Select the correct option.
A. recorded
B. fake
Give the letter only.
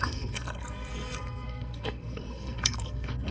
B